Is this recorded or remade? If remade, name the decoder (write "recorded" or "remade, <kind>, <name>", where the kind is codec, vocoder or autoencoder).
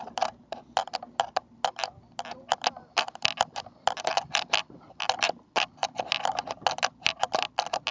recorded